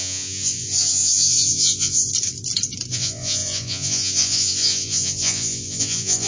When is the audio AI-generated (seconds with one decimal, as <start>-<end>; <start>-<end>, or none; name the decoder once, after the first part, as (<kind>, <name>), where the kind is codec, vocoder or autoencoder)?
0.0-2.1 (vocoder, Vocos); 2.9-6.3